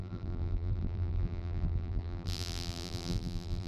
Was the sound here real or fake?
fake